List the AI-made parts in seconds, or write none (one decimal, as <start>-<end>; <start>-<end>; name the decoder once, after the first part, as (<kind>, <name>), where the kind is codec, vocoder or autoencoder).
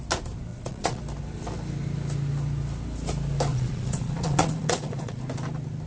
0.5-1.0 (vocoder, Vocos); 3.5-5.2